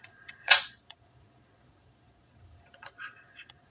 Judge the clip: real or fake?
fake